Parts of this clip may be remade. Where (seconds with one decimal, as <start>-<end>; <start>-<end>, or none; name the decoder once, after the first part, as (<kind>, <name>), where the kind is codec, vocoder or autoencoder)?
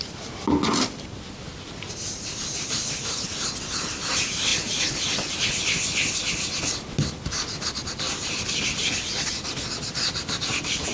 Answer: none